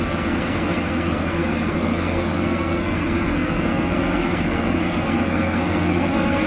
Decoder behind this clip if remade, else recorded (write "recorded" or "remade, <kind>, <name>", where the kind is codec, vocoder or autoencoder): remade, codec, SNAC